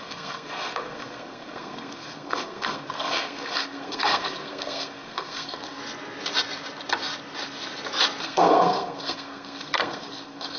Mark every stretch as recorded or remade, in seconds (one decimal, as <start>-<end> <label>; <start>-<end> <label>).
0.0-5.8 remade; 5.8-8.2 recorded; 8.2-10.6 remade